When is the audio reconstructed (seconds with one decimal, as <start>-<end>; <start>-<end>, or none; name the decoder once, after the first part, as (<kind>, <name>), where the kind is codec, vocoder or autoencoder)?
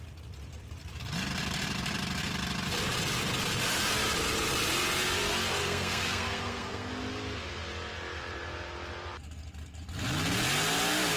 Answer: 5.6-6.9 (codec, SNAC)